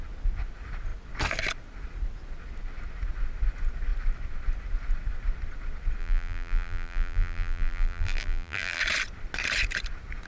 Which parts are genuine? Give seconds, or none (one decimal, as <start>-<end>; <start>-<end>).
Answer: 0.0-6.0; 8.8-10.3